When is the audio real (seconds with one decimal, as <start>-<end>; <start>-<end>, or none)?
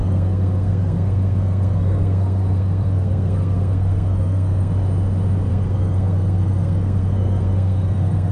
4.7-5.5